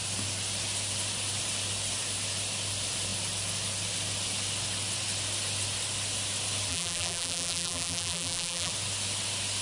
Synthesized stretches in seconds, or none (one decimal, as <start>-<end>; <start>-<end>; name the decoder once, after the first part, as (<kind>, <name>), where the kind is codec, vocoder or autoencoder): 6.7-8.7 (vocoder, BigVGAN v2)